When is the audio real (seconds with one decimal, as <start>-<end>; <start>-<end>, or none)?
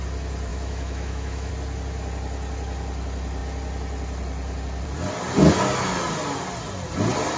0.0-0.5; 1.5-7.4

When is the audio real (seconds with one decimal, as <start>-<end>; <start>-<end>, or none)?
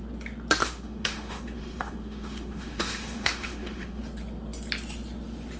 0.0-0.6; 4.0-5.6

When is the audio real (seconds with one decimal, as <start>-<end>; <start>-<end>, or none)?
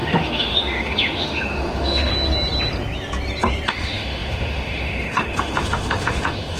2.1-3.7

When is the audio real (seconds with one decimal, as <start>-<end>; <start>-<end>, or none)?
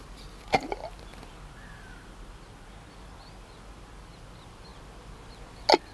0.0-5.9